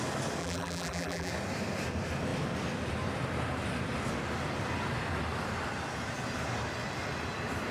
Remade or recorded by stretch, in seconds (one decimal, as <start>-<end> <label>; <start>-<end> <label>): 0.0-0.4 recorded; 0.4-1.3 remade; 1.3-7.7 recorded